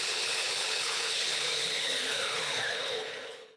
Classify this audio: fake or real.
fake